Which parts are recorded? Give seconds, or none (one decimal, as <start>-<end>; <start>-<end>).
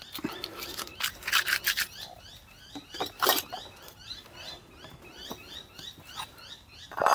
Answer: 0.0-7.1